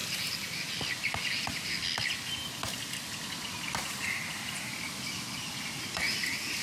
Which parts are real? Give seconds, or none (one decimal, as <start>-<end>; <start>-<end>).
0.0-6.6

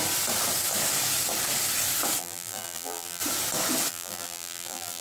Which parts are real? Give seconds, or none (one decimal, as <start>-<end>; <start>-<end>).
0.0-2.2; 3.2-3.9